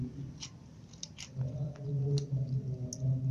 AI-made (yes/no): no